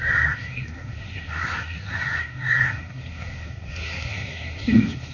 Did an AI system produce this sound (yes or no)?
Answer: yes